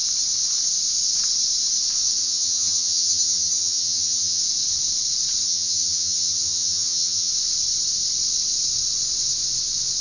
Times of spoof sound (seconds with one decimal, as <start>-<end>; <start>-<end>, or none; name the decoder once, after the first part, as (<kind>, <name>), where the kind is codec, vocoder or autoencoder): 2.2-4.4 (vocoder, HiFi-GAN); 5.4-7.3